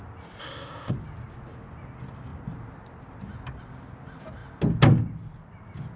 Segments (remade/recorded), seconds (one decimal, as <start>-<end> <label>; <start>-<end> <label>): 0.0-0.4 recorded; 0.4-0.9 remade; 0.9-6.0 recorded